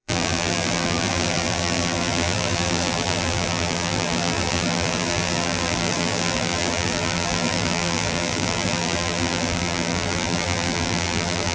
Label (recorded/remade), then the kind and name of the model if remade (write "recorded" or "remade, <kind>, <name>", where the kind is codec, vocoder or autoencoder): remade, vocoder, BigVGAN v2